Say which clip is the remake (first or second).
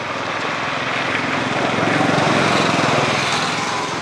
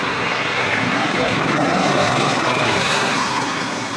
second